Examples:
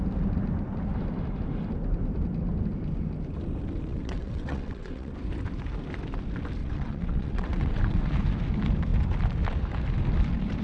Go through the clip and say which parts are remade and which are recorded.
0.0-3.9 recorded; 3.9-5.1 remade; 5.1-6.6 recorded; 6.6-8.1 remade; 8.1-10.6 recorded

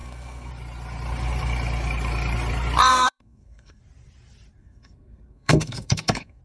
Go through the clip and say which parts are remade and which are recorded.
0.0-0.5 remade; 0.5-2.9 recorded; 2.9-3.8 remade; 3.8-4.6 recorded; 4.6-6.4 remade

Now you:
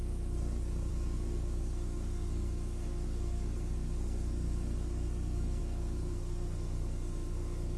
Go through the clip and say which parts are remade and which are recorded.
0.0-7.8 remade

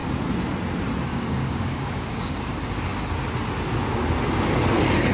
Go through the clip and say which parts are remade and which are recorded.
0.0-1.1 recorded; 1.1-2.3 remade; 2.3-5.1 recorded

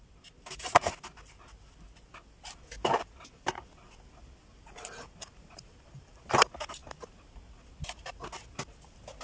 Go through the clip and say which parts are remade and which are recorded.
0.0-4.4 recorded; 4.4-6.2 remade; 6.2-9.2 recorded